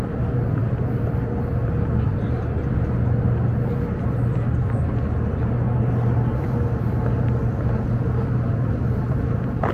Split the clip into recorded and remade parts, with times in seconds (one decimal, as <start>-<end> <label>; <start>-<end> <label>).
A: 0.0-0.6 recorded; 0.6-1.7 remade; 1.7-9.7 recorded